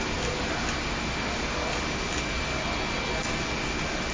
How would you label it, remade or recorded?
recorded